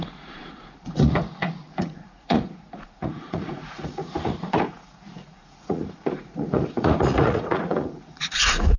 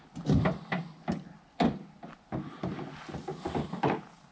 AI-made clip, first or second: first